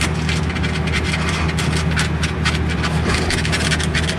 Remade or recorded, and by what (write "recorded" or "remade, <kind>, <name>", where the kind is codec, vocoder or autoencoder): recorded